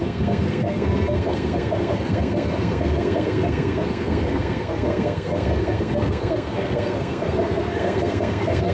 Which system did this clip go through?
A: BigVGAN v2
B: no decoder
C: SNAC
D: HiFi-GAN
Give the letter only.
C